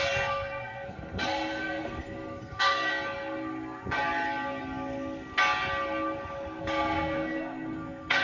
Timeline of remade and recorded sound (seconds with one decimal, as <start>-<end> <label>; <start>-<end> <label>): 0.0-2.9 remade; 2.9-6.6 recorded; 6.6-8.2 remade